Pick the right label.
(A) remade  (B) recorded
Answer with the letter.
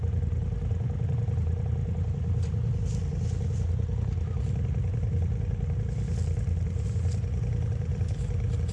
B